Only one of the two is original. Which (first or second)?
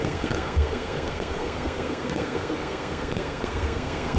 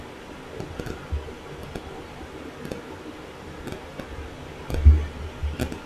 second